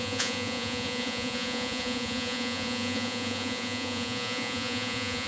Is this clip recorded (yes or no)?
no